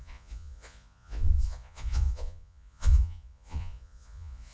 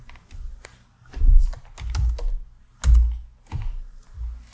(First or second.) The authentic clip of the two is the second